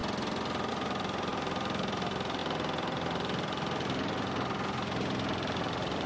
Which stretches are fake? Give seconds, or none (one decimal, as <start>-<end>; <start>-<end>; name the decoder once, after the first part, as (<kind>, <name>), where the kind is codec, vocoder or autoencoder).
0.7-1.3 (vocoder, BigVGAN v2); 1.8-2.4; 5.6-6.1